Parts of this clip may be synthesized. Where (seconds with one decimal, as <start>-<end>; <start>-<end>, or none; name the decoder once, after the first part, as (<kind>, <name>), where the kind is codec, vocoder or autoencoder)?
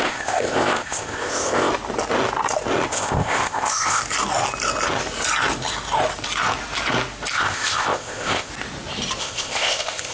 0.0-1.7 (codec, ZipCodec); 2.9-4.0; 7.3-8.5; 9.2-10.1